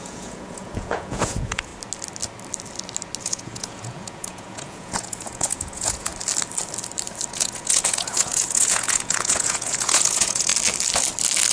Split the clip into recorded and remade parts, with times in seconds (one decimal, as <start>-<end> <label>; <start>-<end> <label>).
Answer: 0.0-1.7 remade; 1.7-3.2 recorded; 3.2-6.1 remade; 6.1-7.3 recorded; 7.3-10.5 remade; 10.5-11.5 recorded